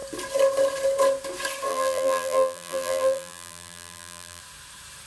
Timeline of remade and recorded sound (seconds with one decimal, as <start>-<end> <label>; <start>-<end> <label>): 0.0-1.7 recorded; 1.7-4.4 remade; 4.4-5.1 recorded

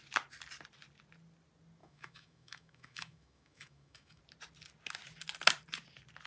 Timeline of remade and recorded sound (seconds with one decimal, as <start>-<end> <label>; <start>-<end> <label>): 0.0-1.8 recorded; 1.8-4.2 remade; 4.2-6.3 recorded

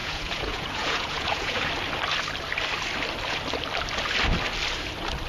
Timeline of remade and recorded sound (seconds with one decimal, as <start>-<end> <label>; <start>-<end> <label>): 0.0-1.7 remade; 1.7-5.3 recorded